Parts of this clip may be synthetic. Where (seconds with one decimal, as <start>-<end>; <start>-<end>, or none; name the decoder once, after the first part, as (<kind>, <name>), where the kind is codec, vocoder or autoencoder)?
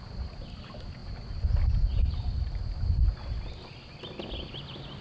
none